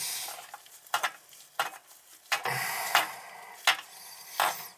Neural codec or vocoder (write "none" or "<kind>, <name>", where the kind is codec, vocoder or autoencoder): none